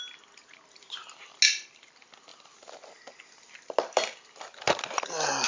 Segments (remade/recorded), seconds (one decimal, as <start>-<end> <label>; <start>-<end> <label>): 0.0-5.5 recorded